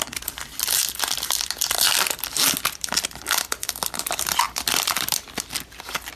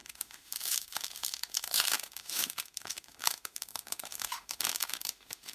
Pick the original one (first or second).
first